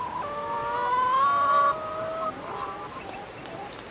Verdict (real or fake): real